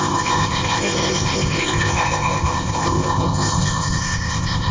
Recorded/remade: remade